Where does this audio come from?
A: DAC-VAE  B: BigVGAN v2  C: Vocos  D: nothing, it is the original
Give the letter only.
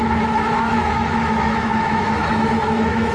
A